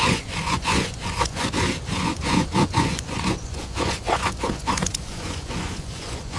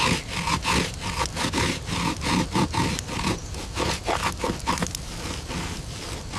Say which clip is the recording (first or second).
second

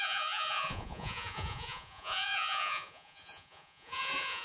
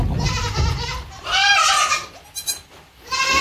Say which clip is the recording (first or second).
second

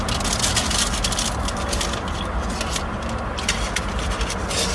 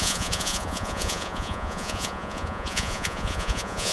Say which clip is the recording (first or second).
first